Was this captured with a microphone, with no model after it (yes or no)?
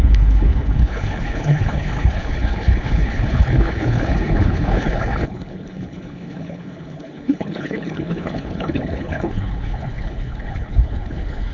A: no